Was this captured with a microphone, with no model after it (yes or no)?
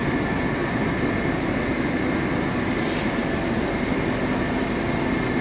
yes